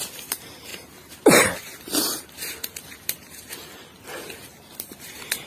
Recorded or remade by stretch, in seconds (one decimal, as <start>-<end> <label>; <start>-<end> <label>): 0.0-5.5 recorded